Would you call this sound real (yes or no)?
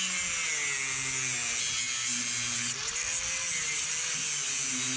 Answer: yes